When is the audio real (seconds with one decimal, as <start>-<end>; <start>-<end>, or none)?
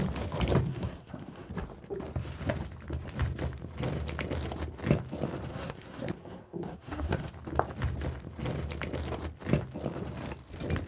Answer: 0.0-0.7; 1.5-5.5; 7.3-10.9